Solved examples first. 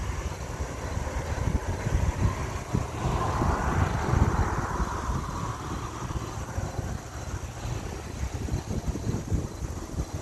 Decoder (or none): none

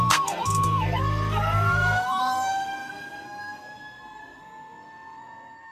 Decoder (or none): codec, SNAC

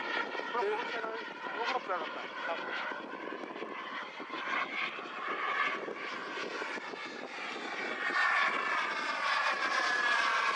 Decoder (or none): none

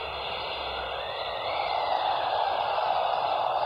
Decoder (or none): none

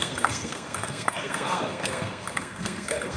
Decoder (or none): codec, SNAC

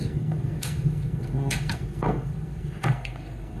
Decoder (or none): codec, SNAC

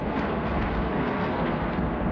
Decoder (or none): codec, SNAC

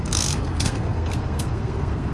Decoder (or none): codec, SNAC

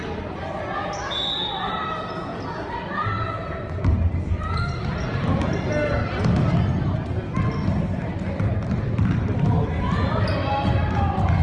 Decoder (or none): none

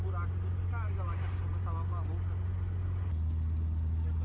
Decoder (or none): none